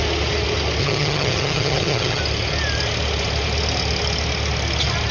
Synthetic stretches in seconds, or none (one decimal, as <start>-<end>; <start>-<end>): 0.8-2.2